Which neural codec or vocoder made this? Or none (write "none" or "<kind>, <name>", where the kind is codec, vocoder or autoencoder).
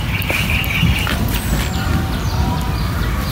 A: none